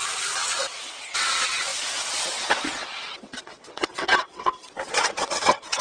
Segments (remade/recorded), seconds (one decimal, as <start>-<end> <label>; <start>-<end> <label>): 0.0-5.8 remade